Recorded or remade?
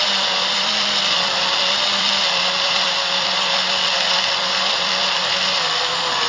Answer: remade